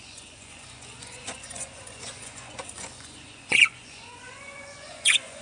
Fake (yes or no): yes